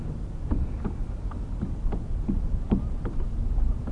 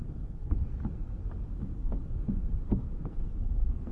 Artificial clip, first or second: second